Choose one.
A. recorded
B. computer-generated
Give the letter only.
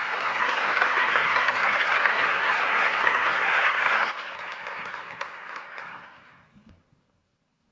B